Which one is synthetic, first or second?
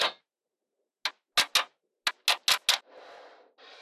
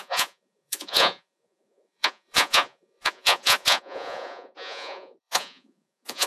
second